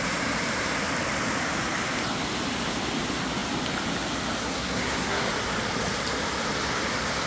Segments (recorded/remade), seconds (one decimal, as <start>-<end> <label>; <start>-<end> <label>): 0.0-4.4 recorded; 4.4-5.3 remade; 5.3-7.3 recorded